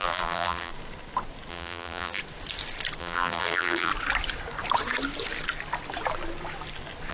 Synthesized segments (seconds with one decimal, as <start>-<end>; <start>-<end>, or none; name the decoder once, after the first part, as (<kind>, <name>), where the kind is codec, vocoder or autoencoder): 0.0-0.7 (vocoder, BigVGAN v2); 1.5-2.2; 3.0-3.9